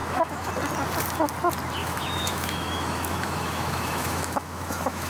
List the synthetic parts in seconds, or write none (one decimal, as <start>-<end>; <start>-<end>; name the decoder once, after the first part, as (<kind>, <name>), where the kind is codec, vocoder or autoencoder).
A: 0.0-0.5 (autoencoder, DAC-VAE); 1.8-5.1